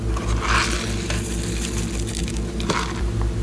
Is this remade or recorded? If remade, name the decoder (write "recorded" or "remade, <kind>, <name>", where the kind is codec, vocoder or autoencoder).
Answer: recorded